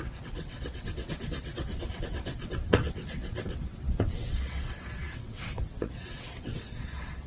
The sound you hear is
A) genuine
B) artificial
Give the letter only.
B